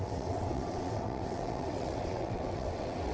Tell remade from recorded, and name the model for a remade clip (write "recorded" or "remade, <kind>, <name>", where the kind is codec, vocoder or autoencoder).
remade, vocoder, WaveNeXt